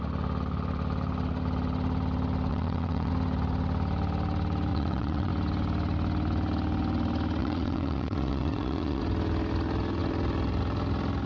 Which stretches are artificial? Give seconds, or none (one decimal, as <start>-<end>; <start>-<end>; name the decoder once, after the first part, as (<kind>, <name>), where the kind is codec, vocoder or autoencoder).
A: 2.5-3.1 (vocoder, WaveNeXt); 4.7-5.3; 7.4-9.0